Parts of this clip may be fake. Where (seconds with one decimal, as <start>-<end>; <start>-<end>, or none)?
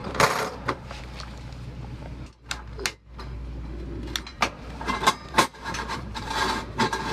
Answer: 0.0-1.0; 4.3-6.3